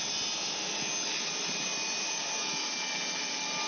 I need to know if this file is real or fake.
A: real